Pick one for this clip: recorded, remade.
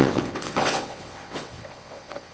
remade